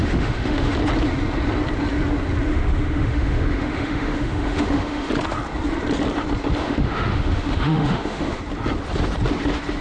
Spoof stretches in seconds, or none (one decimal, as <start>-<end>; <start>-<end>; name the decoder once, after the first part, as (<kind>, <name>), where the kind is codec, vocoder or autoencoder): 0.0-0.7 (autoencoder, DAC-VAE); 2.5-5.1; 6.6-8.4